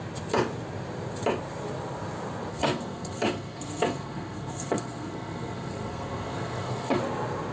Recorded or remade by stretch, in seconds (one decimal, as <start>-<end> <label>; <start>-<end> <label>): 0.0-2.5 recorded; 2.5-7.0 remade; 7.0-7.5 recorded